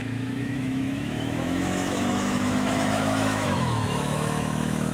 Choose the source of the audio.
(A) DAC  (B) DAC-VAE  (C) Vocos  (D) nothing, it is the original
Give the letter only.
B